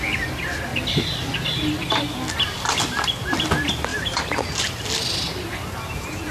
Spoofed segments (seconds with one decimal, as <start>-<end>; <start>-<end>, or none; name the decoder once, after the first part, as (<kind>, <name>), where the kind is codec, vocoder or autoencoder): none

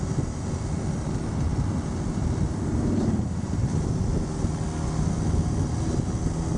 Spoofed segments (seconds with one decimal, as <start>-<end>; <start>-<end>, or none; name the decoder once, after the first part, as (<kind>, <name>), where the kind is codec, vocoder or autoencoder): none